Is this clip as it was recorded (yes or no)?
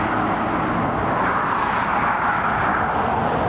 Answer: yes